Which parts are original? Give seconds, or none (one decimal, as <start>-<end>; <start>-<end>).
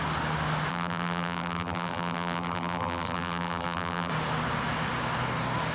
0.0-0.7; 4.1-5.7